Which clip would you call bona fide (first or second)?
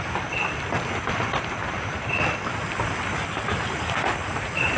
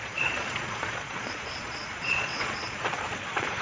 first